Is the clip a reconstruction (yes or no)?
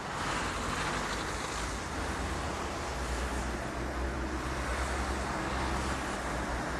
no